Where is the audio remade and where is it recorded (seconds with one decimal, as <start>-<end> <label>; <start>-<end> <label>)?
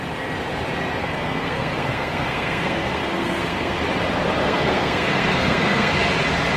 0.0-1.0 recorded; 1.0-3.8 remade; 3.8-4.4 recorded; 4.4-5.9 remade; 5.9-6.6 recorded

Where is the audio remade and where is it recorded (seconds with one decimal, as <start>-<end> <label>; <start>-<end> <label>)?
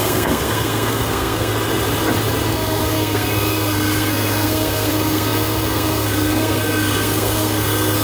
0.0-1.5 remade; 1.5-2.5 recorded; 2.5-8.0 remade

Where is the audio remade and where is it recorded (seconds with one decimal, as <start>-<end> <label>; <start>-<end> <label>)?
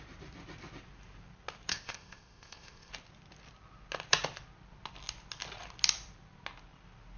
0.0-1.7 recorded; 1.7-2.9 remade; 2.9-7.2 recorded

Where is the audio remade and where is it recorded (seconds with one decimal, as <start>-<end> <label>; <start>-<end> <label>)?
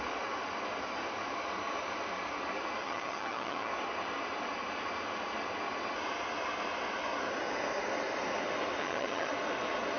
0.0-2.8 recorded; 2.8-3.7 remade; 3.7-8.8 recorded; 8.8-9.3 remade; 9.3-10.0 recorded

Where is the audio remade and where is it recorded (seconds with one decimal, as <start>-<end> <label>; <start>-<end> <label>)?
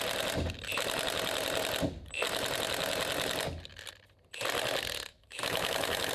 0.0-5.1 recorded; 5.1-6.1 remade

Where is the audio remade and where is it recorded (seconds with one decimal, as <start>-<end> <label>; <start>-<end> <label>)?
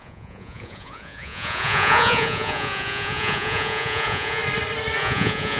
0.0-4.4 remade; 4.4-5.0 recorded; 5.0-5.6 remade